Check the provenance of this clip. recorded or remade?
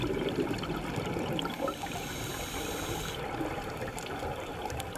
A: recorded